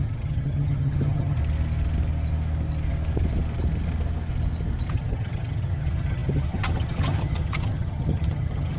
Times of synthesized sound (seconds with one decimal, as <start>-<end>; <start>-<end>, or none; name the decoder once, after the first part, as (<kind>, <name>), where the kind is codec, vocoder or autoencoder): 0.0-1.4 (vocoder, HiFi-GAN); 4.9-8.8